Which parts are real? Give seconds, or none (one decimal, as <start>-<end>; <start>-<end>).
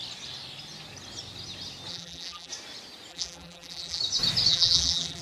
0.0-1.9; 2.5-3.1; 4.0-4.5